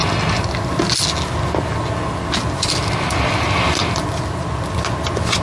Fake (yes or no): no